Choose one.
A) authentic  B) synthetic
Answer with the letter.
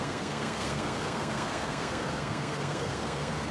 B